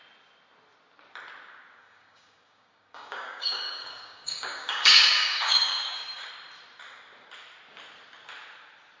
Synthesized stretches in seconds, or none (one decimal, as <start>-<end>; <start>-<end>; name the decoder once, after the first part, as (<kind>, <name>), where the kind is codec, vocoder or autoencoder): 1.8-6.3 (codec, DAC)